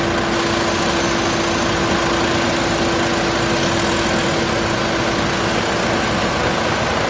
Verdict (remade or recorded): recorded